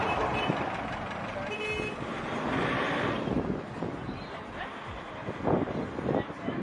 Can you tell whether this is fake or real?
real